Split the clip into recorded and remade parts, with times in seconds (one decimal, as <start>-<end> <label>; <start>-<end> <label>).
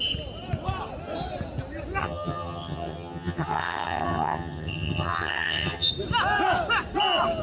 0.0-2.0 recorded; 2.0-5.9 remade; 5.9-7.4 recorded